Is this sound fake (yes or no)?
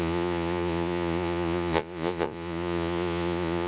yes